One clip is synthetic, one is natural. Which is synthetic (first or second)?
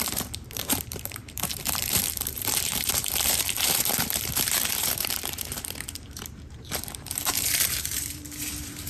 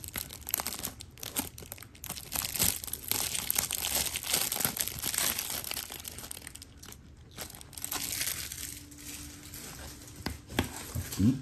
first